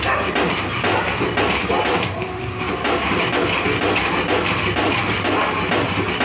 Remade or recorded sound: recorded